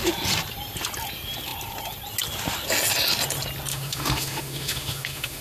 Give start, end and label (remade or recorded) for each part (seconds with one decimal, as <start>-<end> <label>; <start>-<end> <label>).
0.0-3.7 recorded; 3.7-5.4 remade